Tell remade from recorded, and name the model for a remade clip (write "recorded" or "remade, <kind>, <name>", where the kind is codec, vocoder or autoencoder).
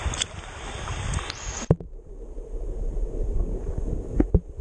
recorded